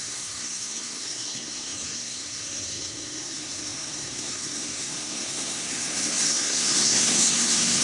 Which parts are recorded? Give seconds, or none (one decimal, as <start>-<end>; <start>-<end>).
none